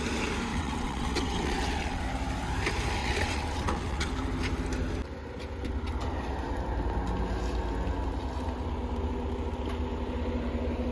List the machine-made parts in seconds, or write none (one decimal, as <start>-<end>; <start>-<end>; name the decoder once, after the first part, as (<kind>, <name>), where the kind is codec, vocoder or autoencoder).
0.5-2.0 (vocoder, WaveNeXt); 3.0-4.1